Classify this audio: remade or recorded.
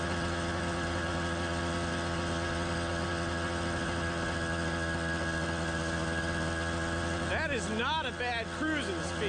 recorded